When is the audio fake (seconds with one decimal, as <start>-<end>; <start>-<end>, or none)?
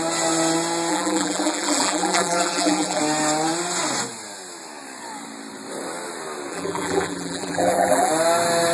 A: 0.9-3.0; 6.5-8.1